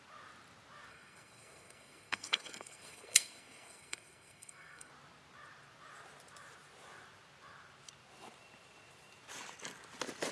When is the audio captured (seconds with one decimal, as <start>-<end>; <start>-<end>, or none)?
0.0-0.9; 4.9-10.3